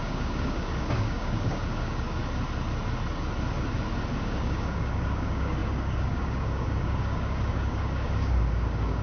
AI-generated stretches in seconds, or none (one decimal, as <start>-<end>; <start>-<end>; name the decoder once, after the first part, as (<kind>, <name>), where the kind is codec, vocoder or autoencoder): 0.0-2.2 (codec, DAC); 4.1-9.0